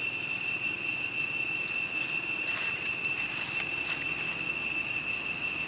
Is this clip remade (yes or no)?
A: yes